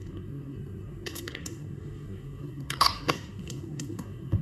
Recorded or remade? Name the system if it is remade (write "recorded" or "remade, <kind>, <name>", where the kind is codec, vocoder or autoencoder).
remade, codec, SNAC